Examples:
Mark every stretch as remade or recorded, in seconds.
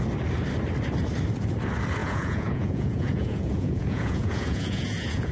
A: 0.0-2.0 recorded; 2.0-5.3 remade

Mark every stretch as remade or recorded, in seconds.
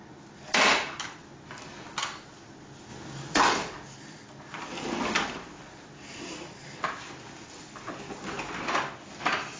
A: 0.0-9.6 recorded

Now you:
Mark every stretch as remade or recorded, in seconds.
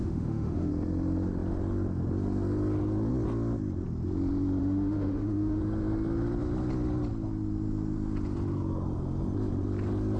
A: 0.0-0.7 remade; 0.7-4.6 recorded; 4.6-5.6 remade; 5.6-10.2 recorded